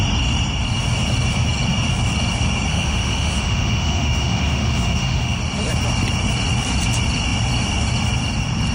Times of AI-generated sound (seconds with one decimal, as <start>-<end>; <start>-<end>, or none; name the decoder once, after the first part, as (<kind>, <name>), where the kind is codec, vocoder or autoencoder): 2.7-5.4 (autoencoder, DAC-VAE)